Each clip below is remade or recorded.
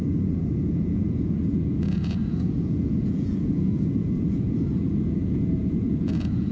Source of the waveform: remade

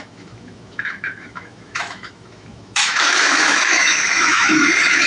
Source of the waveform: remade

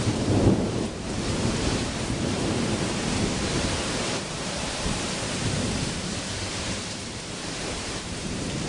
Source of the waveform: remade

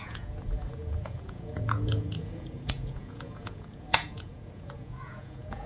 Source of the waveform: remade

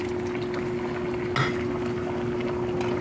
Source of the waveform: recorded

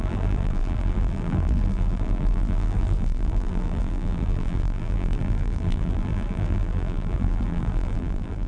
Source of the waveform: remade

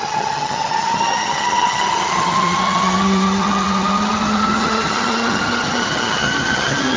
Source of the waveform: remade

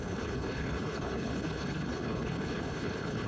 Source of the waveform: remade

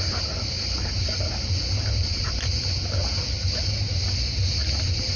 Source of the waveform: recorded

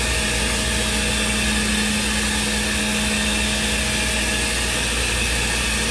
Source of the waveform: recorded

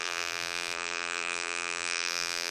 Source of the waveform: remade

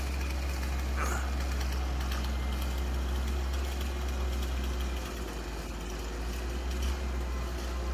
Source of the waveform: recorded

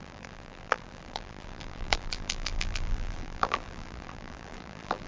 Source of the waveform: remade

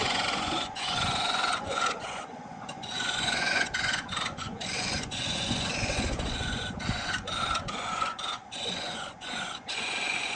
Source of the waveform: remade